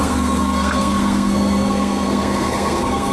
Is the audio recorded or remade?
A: remade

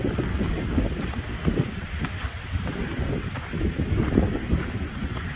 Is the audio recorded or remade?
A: recorded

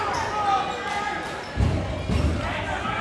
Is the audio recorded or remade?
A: recorded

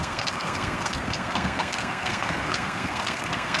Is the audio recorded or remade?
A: remade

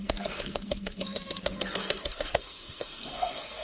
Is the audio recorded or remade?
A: remade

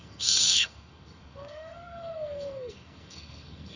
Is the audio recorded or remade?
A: remade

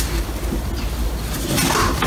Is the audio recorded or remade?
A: recorded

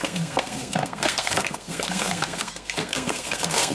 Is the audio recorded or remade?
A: remade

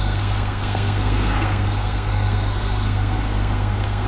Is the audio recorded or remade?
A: remade